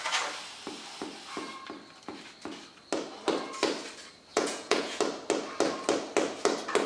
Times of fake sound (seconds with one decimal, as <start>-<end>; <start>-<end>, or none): 4.3-5.0